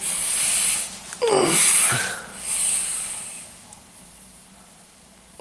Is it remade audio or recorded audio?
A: recorded